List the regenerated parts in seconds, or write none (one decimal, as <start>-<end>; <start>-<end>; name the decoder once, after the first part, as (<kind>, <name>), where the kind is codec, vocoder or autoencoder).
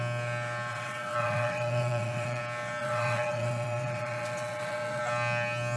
0.7-2.4 (vocoder, WaveNeXt); 2.8-5.0